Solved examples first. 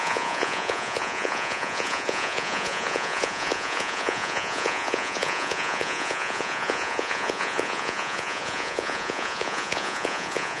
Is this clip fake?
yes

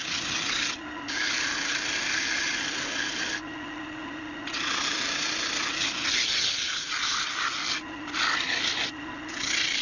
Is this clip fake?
no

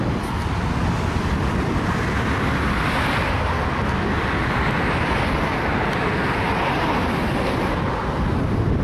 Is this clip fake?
no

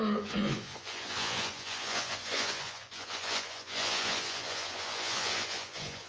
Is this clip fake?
yes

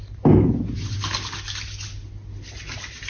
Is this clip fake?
no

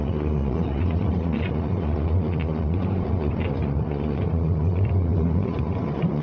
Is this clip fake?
yes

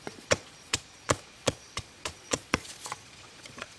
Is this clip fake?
yes